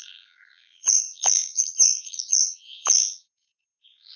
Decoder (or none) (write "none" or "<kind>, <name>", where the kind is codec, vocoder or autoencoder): vocoder, BigVGAN v2